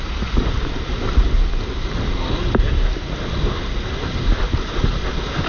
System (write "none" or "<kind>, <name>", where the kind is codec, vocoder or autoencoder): none